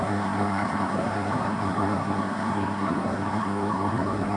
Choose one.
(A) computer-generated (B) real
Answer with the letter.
A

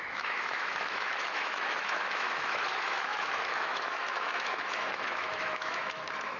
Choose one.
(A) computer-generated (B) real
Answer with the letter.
A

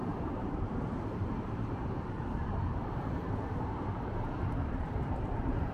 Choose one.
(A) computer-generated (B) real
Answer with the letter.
A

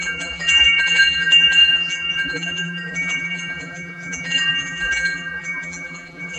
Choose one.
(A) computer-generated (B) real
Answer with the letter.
A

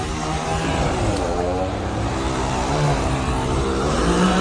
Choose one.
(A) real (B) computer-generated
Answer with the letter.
B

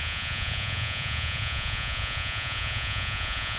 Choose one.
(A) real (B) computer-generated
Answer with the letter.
B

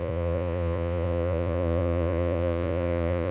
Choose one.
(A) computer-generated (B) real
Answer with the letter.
A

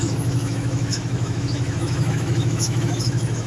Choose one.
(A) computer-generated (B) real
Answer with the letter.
A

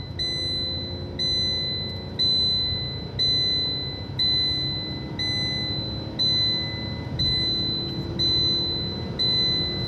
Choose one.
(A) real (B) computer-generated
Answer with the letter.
A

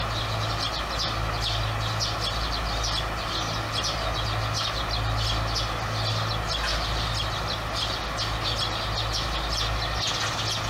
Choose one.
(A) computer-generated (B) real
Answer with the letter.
B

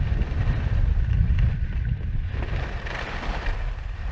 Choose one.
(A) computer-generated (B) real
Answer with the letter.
B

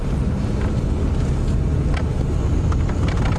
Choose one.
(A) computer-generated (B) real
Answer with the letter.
B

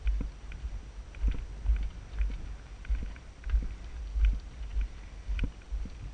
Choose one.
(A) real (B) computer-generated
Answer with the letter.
A